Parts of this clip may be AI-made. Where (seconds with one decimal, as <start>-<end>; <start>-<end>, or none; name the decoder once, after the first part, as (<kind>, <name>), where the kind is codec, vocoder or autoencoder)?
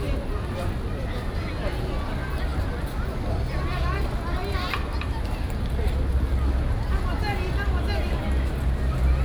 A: none